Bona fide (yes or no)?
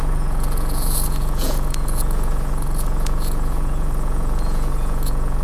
no